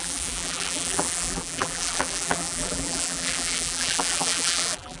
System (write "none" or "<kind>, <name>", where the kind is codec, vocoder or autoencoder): vocoder, BigVGAN v2